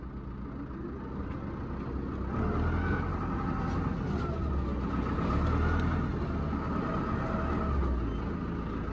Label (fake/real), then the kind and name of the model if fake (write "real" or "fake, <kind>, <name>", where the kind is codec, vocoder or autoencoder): real